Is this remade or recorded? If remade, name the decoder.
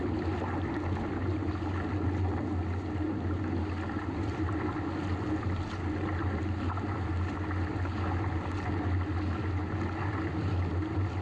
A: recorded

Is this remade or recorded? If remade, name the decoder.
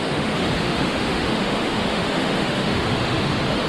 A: remade, autoencoder, DAC-VAE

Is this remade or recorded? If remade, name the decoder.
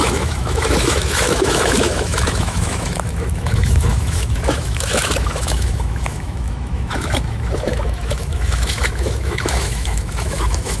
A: remade, autoencoder, DAC-VAE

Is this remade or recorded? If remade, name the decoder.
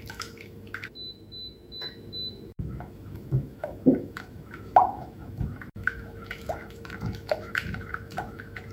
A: remade, autoencoder, DAC-VAE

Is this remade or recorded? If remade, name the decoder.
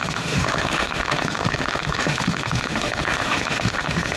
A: remade, autoencoder, DAC-VAE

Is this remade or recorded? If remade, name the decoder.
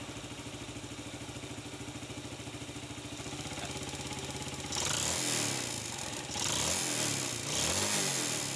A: recorded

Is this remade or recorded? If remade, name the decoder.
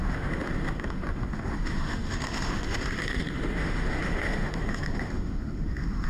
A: remade, autoencoder, DAC-VAE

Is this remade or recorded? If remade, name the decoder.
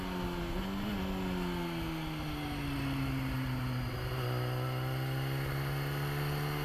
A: recorded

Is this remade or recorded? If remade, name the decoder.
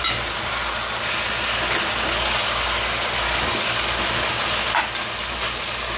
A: recorded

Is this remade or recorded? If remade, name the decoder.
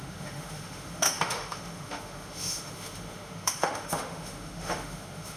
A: remade, autoencoder, DAC-VAE